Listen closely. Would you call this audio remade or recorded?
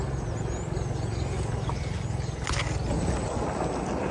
recorded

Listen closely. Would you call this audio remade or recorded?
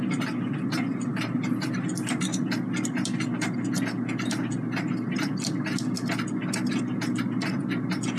recorded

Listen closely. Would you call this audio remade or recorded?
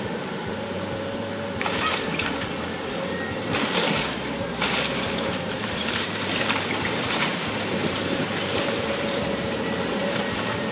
remade